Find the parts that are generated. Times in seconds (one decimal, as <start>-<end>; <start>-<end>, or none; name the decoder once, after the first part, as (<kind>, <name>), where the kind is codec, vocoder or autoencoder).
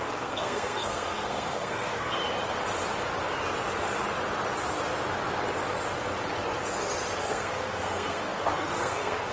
0.0-2.2 (codec, SNAC); 7.2-9.3